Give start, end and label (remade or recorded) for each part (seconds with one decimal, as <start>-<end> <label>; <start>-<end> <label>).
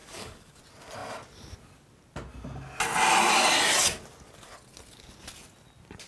0.0-0.6 remade; 0.6-6.1 recorded